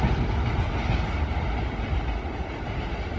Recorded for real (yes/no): yes